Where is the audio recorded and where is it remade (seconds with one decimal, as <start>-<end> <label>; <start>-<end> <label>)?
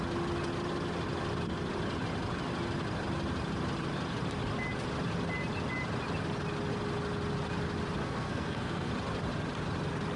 0.0-8.0 recorded; 8.0-8.9 remade; 8.9-10.2 recorded